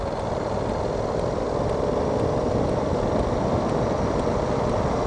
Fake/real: real